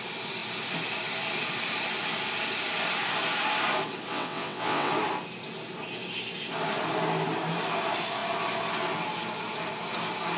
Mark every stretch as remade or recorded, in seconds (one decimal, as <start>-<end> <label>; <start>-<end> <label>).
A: 0.0-4.1 recorded; 4.1-4.9 remade; 4.9-10.4 recorded